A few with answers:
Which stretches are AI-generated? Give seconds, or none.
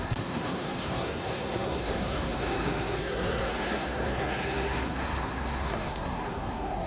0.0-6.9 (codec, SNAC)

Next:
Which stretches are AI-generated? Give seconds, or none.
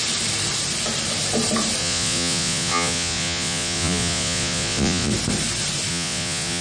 1.8-5.1 (vocoder, Vocos); 5.9-6.6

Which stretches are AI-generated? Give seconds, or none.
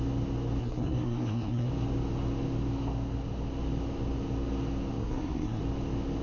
0.6-1.7 (codec, SNAC); 5.0-5.6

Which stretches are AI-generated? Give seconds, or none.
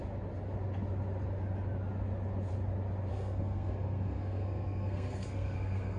3.1-6.0 (codec, SNAC)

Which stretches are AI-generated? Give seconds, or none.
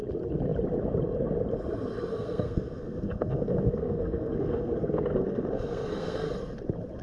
2.1-6.3 (codec, SNAC)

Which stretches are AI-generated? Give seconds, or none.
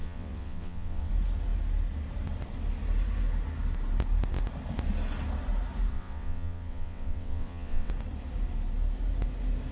0.0-1.1 (vocoder, WaveNeXt); 5.9-7.9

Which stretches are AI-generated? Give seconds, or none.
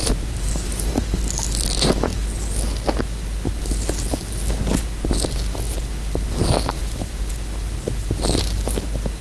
0.0-0.9 (vocoder, BigVGAN v2); 6.8-7.3